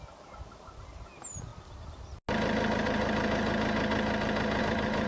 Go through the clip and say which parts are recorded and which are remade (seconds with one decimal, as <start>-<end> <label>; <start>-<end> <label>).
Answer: 0.0-5.1 recorded